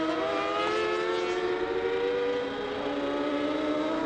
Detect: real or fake real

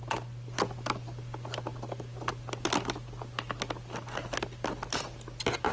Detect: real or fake real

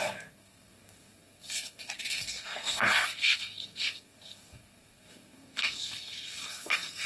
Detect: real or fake fake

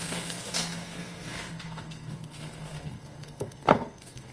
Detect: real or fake fake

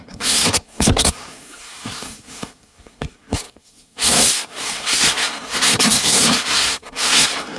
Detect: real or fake fake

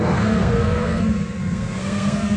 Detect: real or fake fake